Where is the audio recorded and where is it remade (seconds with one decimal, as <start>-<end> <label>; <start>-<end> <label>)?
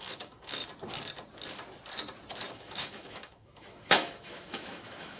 0.0-0.6 remade; 0.6-2.5 recorded; 2.5-5.2 remade